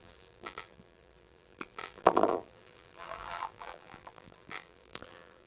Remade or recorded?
remade